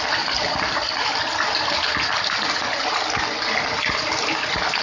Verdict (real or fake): real